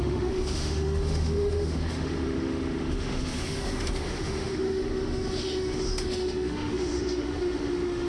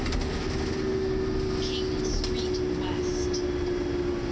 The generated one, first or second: first